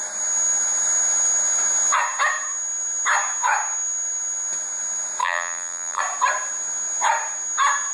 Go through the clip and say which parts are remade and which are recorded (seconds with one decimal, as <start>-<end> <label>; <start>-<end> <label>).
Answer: 0.0-5.2 recorded; 5.2-6.0 remade; 6.0-7.9 recorded